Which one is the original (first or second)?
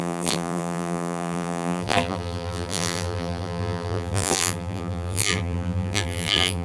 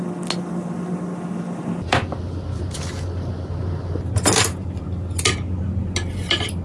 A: second